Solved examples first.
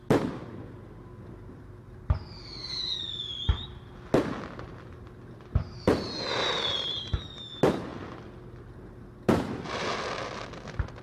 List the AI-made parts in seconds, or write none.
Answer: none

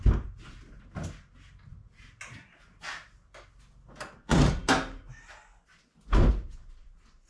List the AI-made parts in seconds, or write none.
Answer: none

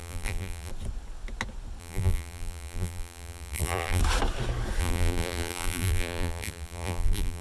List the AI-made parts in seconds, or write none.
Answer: 0.0-0.7 (vocoder, BigVGAN v2); 1.8-4.0; 4.8-7.4

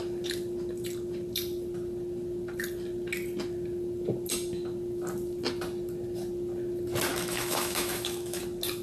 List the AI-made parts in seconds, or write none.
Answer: 7.1-8.4 (autoencoder, DAC-VAE)

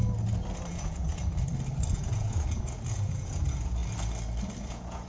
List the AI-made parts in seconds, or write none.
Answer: 0.7-1.1 (vocoder, Vocos); 1.9-3.8; 4.6-5.1